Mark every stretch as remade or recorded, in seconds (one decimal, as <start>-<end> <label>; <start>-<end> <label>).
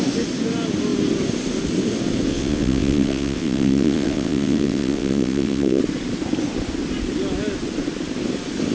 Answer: 0.0-2.3 recorded; 2.3-5.8 remade; 5.8-8.7 recorded